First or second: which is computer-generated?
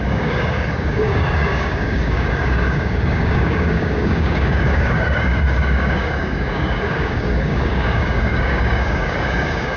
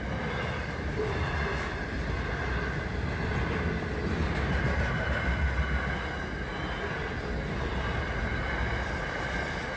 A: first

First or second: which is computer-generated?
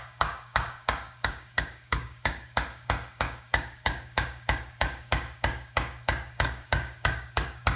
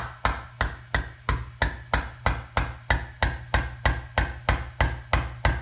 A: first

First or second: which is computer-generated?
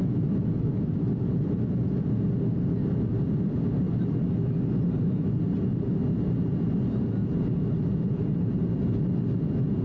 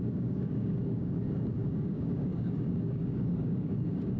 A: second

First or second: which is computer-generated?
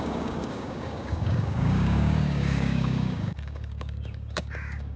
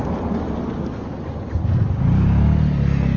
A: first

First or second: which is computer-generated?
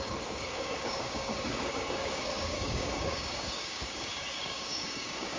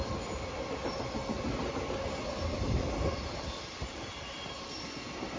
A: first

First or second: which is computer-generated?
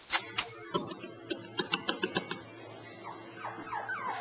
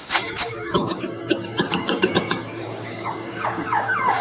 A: second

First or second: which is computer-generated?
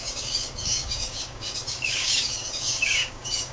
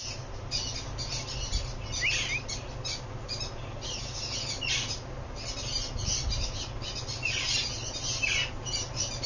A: first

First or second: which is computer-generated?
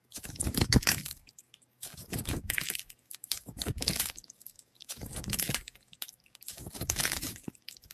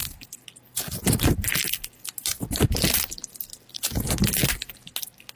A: first